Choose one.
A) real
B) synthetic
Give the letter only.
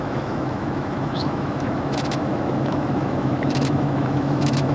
B